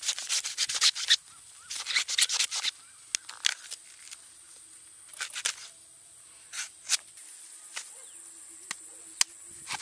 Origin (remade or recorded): recorded